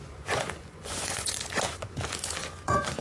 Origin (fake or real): fake